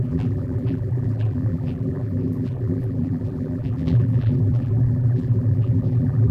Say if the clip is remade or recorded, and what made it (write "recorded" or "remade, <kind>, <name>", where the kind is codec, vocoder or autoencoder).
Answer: remade, vocoder, BigVGAN v2